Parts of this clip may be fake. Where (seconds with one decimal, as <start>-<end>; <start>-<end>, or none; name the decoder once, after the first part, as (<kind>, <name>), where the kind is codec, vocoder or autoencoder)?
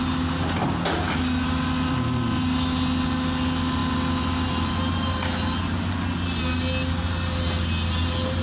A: none